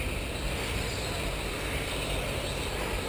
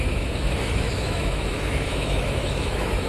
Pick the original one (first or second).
first